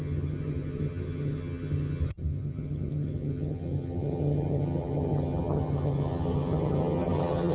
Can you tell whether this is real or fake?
fake